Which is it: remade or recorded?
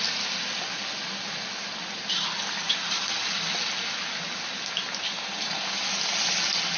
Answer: recorded